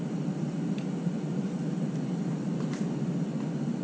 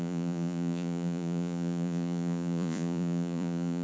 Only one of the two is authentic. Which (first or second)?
first